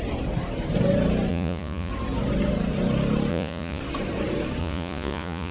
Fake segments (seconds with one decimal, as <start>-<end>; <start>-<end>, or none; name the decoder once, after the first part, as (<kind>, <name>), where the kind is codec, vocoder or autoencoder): 1.3-1.9 (vocoder, Vocos); 3.3-3.8; 4.6-5.5